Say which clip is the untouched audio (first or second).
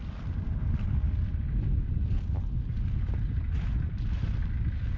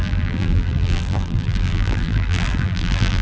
first